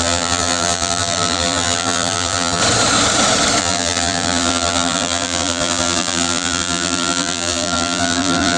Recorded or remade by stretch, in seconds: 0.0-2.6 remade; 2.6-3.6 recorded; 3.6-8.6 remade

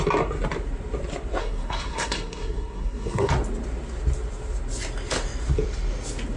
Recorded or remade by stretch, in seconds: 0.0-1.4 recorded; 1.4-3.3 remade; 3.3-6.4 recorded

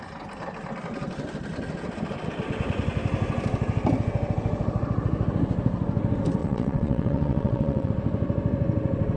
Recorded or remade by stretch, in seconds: 0.0-6.4 recorded; 6.4-7.9 remade; 7.9-9.2 recorded